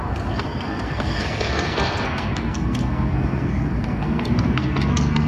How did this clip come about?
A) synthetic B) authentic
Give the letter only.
A